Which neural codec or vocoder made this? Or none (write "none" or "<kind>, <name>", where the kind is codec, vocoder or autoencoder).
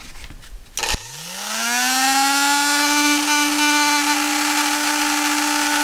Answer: none